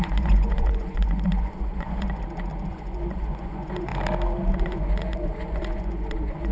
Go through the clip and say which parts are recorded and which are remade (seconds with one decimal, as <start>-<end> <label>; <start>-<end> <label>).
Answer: 0.0-2.2 remade; 2.2-2.7 recorded; 2.7-3.9 remade; 3.9-4.6 recorded; 4.6-6.5 remade